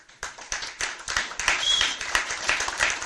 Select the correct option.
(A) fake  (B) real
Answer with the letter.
A